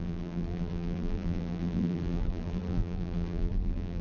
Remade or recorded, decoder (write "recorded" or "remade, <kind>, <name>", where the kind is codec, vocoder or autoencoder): remade, vocoder, BigVGAN v2